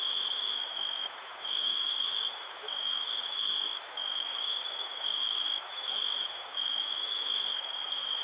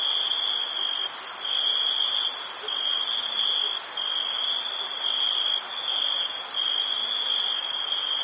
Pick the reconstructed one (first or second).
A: first